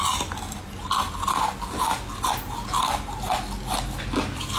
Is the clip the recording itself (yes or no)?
yes